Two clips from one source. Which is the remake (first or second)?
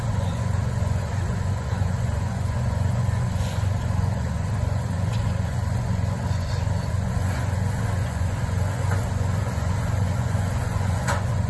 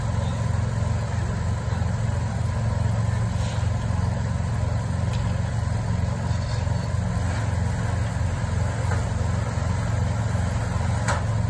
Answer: first